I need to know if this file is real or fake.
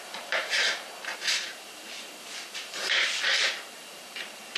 fake